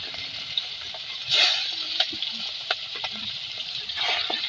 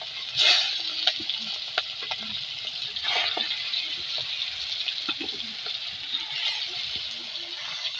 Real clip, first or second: second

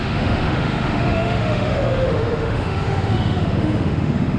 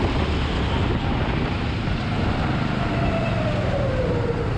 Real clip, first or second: second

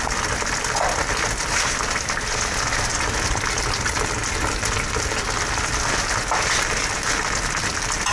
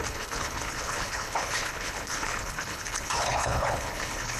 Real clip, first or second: first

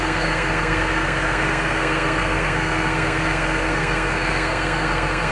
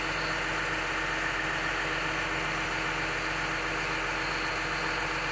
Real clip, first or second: second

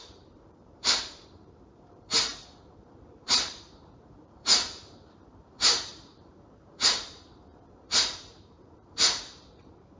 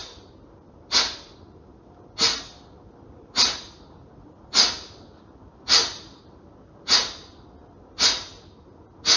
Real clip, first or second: second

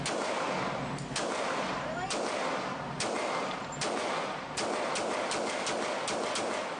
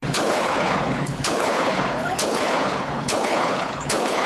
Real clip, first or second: first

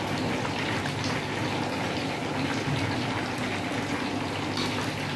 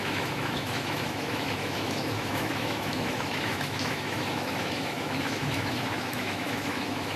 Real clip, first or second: first